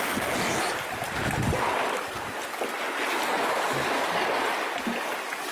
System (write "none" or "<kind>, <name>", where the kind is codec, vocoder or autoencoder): none